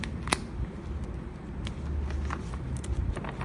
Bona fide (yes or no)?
yes